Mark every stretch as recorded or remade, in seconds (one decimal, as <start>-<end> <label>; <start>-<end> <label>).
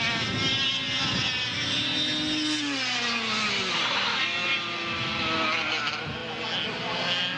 0.0-7.4 recorded